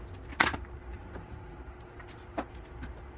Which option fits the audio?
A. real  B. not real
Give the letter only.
A